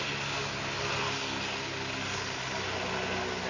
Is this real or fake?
real